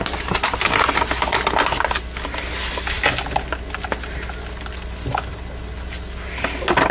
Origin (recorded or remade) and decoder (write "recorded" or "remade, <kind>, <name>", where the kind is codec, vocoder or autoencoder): recorded